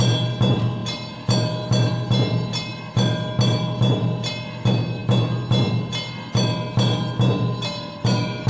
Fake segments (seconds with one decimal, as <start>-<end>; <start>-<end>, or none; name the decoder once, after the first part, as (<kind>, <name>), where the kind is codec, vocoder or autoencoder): none